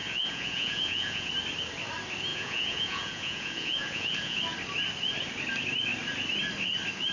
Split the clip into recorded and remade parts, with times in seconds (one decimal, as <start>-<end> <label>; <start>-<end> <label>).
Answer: 0.0-1.3 remade; 1.3-2.3 recorded; 2.3-4.4 remade; 4.4-7.1 recorded